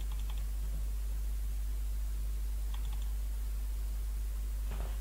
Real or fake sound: real